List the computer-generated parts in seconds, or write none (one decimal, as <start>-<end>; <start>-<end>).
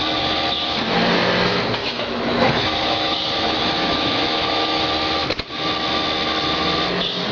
1.8-4.8